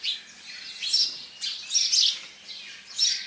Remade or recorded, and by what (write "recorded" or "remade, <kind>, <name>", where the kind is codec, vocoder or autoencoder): recorded